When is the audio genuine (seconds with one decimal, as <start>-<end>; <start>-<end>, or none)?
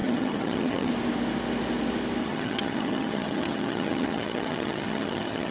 0.9-2.2